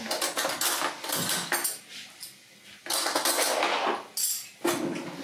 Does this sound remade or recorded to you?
recorded